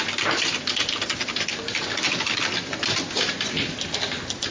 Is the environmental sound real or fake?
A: real